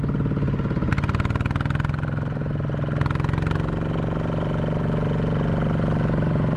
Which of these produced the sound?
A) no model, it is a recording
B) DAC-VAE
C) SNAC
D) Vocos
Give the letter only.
A